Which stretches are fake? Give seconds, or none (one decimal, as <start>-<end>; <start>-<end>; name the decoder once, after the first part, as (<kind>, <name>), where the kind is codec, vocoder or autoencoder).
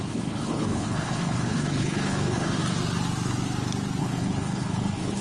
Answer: 0.0-2.6 (codec, HILCodec); 4.0-5.2